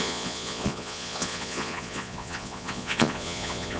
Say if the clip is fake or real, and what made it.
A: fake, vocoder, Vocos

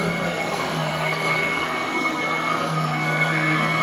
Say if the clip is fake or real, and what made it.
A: fake, codec, SNAC